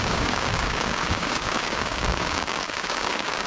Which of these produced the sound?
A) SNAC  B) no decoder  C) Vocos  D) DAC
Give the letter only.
D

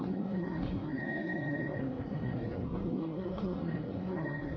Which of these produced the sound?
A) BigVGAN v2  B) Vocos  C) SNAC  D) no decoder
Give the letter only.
C